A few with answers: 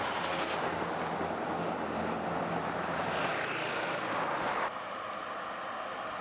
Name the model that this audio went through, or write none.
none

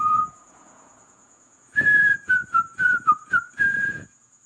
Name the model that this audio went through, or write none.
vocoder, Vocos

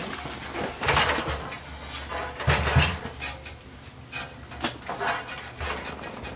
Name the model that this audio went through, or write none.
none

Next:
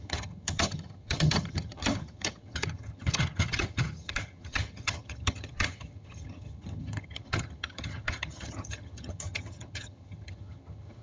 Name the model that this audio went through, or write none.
vocoder, HiFi-GAN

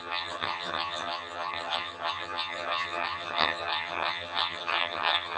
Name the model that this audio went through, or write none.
vocoder, HiFi-GAN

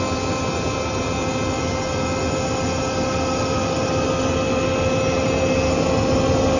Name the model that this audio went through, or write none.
none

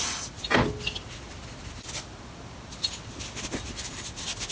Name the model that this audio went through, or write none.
none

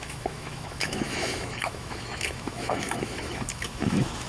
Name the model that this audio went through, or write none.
autoencoder, DAC-VAE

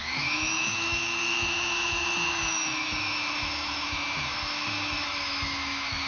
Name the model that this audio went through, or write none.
autoencoder, DAC-VAE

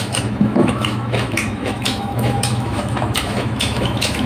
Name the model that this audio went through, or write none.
autoencoder, DAC-VAE